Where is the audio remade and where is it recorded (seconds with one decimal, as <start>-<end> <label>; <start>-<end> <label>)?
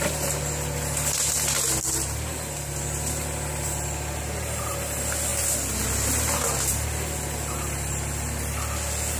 0.0-9.2 recorded